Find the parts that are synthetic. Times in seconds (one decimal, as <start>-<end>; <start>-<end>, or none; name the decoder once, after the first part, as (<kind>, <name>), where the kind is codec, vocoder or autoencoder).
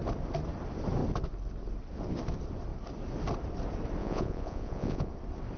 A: 4.0-5.1 (vocoder, Vocos)